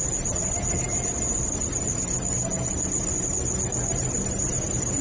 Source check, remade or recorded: recorded